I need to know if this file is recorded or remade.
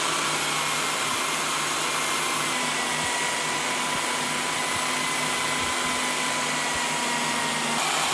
recorded